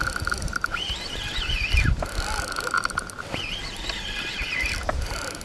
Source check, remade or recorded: recorded